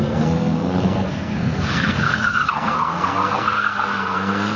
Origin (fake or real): fake